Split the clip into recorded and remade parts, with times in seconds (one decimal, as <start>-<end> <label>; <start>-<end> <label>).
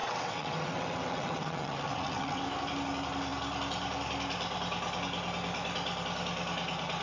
0.0-2.4 remade; 2.4-7.0 recorded